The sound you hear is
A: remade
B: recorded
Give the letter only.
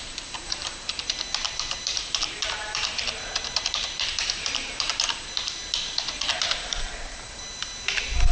A